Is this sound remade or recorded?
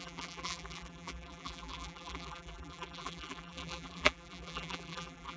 remade